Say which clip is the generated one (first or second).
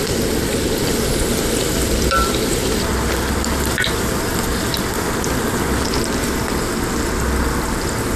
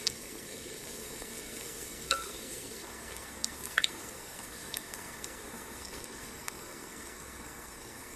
second